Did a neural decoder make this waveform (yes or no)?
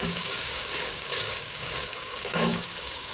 yes